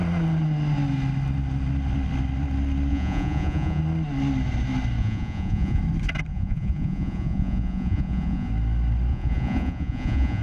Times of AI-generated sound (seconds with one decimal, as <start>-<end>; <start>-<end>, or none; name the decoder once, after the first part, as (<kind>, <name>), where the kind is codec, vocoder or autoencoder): 2.9-3.8 (vocoder, Vocos); 5.0-5.8; 6.3-8.5; 9.1-10.4